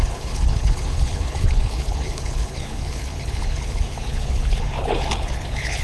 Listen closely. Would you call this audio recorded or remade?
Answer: remade